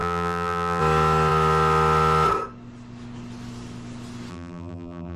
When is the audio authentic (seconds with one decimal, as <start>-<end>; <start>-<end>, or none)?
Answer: 0.8-4.3

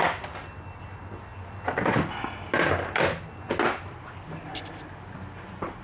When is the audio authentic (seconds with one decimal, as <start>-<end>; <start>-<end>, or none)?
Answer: 0.0-5.8

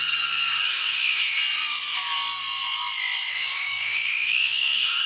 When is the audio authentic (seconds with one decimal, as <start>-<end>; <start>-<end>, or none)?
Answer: 0.0-0.6; 1.4-3.3

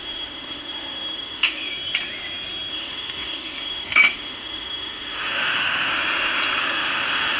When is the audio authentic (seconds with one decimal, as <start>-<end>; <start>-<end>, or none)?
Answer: 1.7-2.7; 5.9-6.6

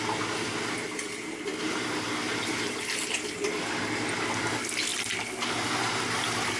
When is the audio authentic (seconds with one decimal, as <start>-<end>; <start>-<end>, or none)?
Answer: 0.0-1.5; 3.5-6.6